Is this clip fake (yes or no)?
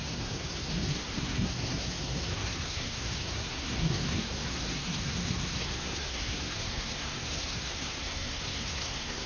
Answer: yes